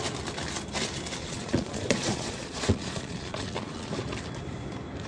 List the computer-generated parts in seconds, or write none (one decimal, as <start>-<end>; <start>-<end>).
1.2-3.9